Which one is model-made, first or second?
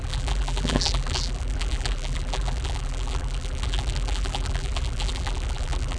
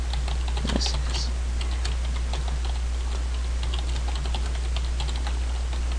first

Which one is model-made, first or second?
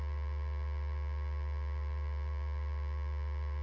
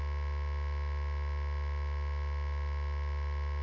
first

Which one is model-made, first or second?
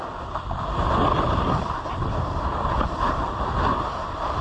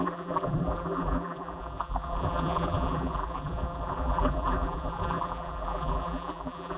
second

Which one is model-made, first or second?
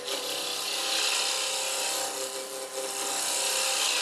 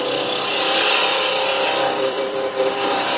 second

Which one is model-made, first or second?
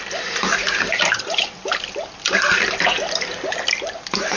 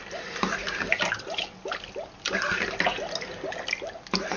first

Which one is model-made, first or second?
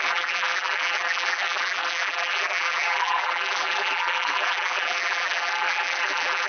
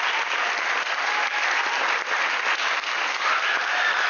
first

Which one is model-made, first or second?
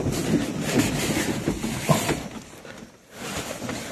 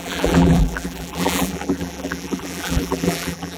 second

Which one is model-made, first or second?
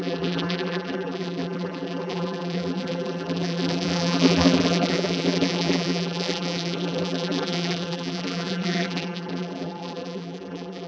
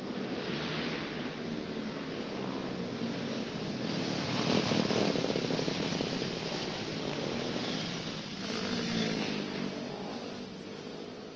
first